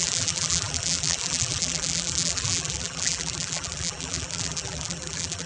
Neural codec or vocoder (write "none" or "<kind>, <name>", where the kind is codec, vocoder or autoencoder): vocoder, BigVGAN v2